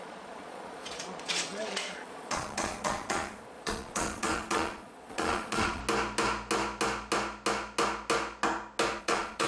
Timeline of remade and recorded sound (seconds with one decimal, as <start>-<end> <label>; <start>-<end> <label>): 0.0-5.8 remade; 5.8-9.0 recorded; 9.0-9.5 remade